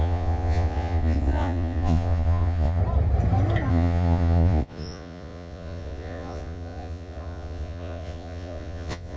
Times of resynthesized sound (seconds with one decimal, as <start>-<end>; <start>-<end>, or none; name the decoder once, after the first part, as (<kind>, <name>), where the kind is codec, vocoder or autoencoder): 0.0-2.8 (vocoder, Vocos); 3.7-9.2